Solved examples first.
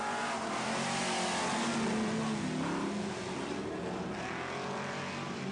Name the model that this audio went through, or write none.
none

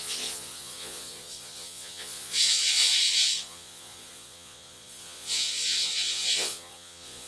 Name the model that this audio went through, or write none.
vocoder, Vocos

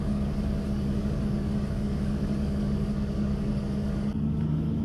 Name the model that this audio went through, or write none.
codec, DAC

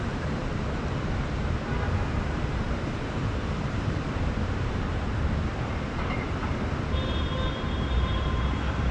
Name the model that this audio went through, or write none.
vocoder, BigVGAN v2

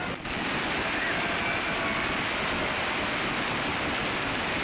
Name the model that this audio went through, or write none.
none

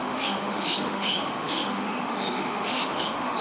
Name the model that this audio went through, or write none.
autoencoder, DAC-VAE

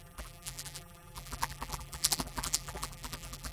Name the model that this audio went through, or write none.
vocoder, BigVGAN v2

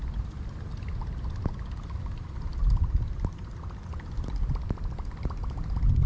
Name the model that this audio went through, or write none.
none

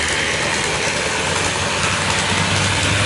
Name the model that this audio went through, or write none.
none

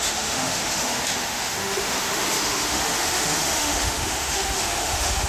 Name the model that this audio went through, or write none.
autoencoder, DAC-VAE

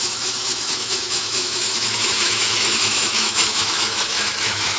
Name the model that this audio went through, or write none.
autoencoder, DAC-VAE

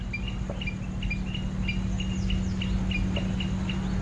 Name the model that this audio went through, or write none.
none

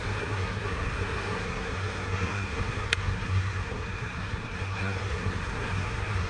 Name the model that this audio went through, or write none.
codec, SNAC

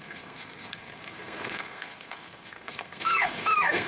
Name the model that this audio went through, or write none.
codec, SNAC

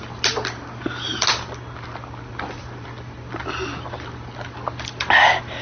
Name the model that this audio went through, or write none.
none